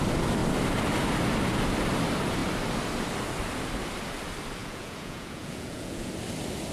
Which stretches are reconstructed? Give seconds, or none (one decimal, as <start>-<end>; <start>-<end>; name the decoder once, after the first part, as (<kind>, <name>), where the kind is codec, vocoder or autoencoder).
4.6-6.1 (vocoder, Vocos)